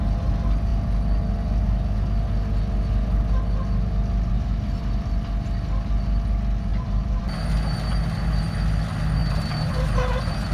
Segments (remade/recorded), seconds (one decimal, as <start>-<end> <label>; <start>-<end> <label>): 0.0-6.7 recorded; 6.7-7.2 remade; 7.2-9.2 recorded; 9.2-10.0 remade; 10.0-10.5 recorded